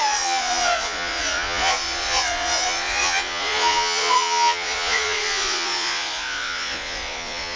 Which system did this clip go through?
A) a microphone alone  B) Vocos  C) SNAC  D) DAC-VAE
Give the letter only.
B